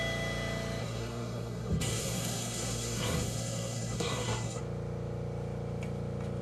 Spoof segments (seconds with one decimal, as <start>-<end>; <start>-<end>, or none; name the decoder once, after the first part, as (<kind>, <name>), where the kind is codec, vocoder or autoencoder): 0.8-4.6 (codec, SNAC)